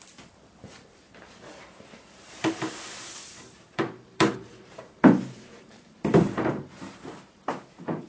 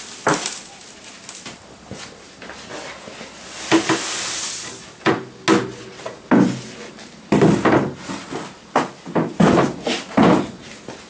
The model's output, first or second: first